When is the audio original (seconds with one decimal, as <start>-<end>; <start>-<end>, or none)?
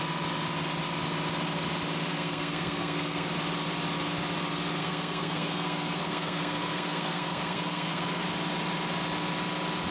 0.0-2.1; 3.3-4.8; 8.2-9.9